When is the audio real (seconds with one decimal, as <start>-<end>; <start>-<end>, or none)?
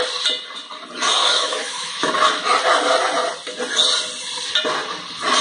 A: 0.0-1.2; 2.1-5.4